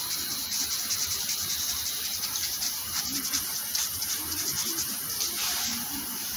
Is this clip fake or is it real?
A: fake